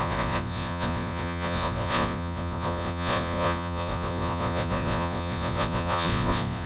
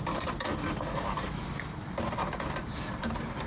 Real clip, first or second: second